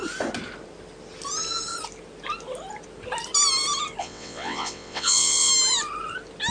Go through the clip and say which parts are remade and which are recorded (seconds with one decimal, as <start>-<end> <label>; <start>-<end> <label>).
0.0-4.0 recorded; 4.0-5.5 remade; 5.5-6.5 recorded